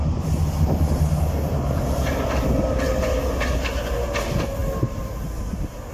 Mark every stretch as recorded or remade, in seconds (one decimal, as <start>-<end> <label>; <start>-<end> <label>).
0.0-5.9 recorded